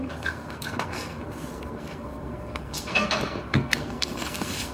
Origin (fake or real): fake